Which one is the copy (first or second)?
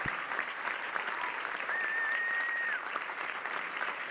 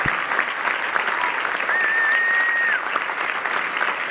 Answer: first